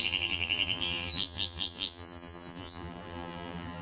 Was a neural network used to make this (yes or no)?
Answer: yes